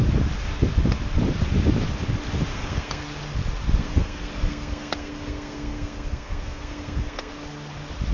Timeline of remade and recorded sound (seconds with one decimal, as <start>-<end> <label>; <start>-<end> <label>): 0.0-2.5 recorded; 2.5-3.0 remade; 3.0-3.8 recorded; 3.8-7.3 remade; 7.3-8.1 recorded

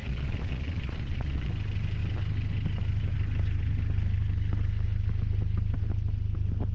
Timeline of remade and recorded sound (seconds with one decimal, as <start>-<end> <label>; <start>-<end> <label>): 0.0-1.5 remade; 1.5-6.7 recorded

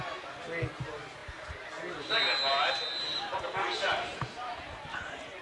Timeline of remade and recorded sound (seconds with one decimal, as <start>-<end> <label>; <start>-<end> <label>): 0.0-3.9 recorded; 3.9-5.0 remade; 5.0-5.4 recorded